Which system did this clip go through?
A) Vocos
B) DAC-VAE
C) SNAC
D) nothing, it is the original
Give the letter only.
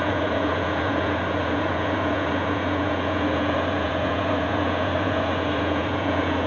A